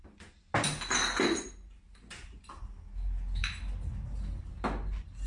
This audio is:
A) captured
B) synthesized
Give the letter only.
A